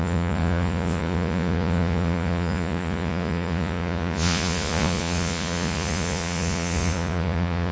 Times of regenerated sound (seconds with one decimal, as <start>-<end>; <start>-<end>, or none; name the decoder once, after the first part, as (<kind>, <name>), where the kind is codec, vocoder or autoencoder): 0.0-7.7 (vocoder, Vocos)